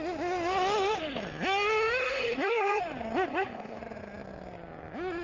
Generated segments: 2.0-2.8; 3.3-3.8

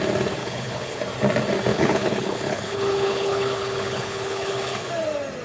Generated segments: 0.4-1.0; 1.7-4.9

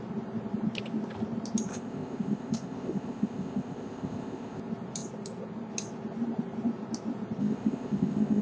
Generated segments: 1.7-4.6; 7.4-8.4

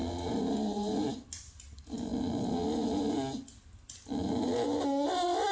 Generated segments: 0.0-1.5

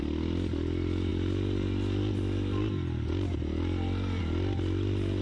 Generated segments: none

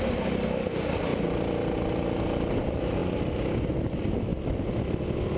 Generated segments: 0.0-1.1; 2.4-3.0; 3.8-4.3